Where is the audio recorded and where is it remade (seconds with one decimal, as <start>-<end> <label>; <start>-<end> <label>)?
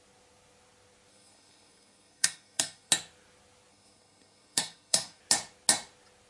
0.0-1.1 recorded; 1.1-2.9 remade; 2.9-3.7 recorded; 3.7-5.2 remade; 5.2-6.3 recorded